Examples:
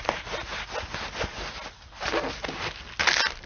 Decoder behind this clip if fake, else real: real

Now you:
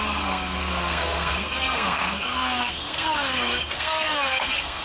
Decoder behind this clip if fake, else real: fake, codec, SNAC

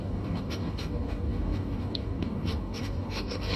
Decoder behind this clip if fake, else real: fake, codec, DAC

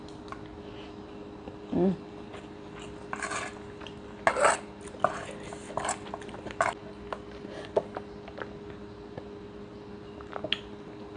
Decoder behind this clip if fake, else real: real